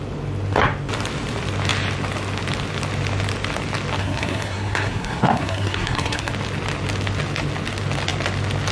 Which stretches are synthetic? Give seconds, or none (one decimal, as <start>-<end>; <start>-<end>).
4.0-6.3